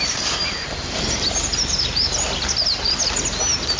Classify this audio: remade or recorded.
recorded